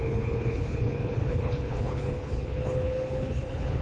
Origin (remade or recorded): remade